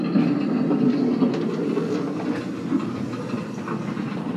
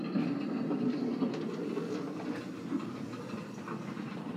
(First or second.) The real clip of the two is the first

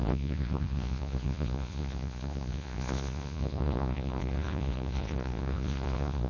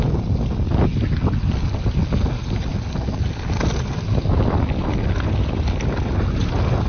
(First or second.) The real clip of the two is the second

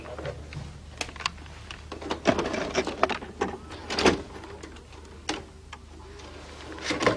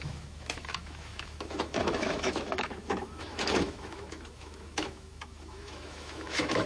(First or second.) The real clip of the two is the first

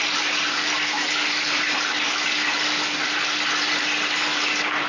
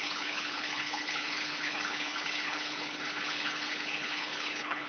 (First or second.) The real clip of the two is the first